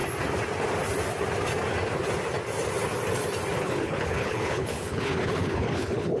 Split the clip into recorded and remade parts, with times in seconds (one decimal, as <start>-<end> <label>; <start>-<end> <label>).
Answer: 0.0-3.6 recorded; 3.6-6.2 remade

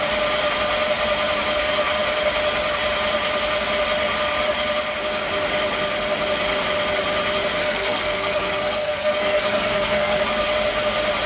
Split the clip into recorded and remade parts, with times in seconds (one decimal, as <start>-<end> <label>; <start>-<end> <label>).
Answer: 0.0-7.6 recorded; 7.6-10.2 remade; 10.2-11.3 recorded

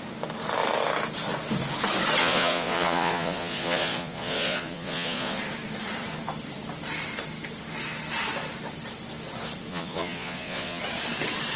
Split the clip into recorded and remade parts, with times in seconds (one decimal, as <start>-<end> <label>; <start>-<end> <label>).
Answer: 0.0-2.2 recorded; 2.2-5.4 remade; 5.4-9.7 recorded; 9.7-10.8 remade; 10.8-11.6 recorded

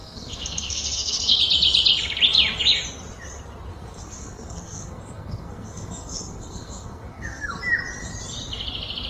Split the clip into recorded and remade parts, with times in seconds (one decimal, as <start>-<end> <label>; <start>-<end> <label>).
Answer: 0.0-1.4 remade; 1.4-3.7 recorded; 3.7-7.6 remade; 7.6-9.1 recorded

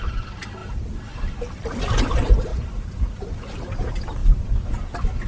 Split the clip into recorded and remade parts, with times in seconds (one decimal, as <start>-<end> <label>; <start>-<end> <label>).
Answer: 0.0-2.5 recorded; 2.5-3.2 remade; 3.2-5.3 recorded

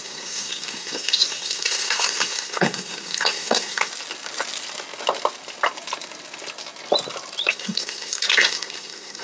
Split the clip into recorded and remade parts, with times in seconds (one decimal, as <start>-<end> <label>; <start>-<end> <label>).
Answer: 0.0-3.9 remade; 3.9-7.5 recorded; 7.5-9.2 remade